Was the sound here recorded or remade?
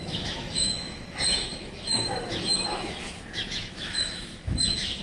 remade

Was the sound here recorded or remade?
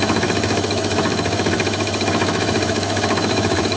remade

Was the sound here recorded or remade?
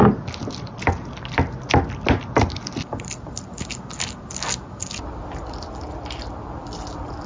recorded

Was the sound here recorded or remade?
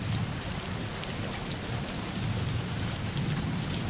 recorded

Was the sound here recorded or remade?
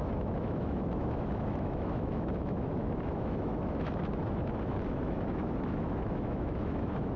remade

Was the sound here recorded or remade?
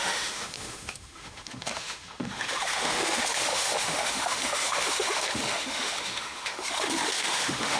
remade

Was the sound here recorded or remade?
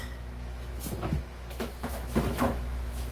remade